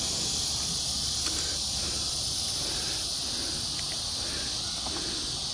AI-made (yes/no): no